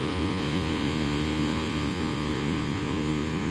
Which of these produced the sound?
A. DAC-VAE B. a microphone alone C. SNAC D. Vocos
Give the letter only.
D